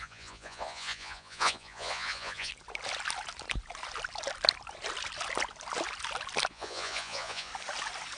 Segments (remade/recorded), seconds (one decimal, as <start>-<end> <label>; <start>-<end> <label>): 0.0-2.5 remade; 2.5-6.5 recorded; 6.5-7.5 remade; 7.5-8.2 recorded